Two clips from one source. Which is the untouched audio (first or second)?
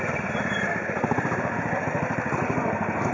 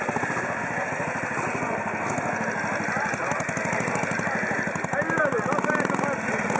second